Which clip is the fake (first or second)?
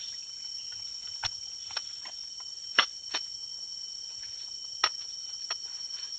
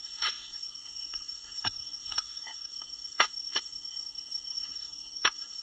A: second